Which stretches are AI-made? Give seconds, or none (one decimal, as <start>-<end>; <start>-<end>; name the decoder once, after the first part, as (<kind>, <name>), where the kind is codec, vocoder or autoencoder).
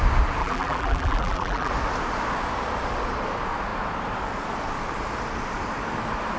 0.4-1.7 (vocoder, BigVGAN v2)